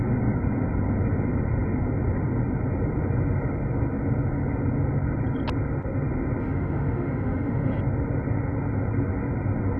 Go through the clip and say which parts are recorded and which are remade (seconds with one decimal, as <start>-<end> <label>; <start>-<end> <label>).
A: 0.0-6.4 recorded; 6.4-7.8 remade; 7.8-9.8 recorded